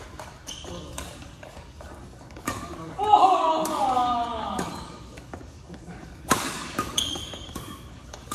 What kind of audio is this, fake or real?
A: fake